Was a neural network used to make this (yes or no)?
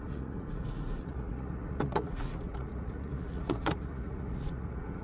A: yes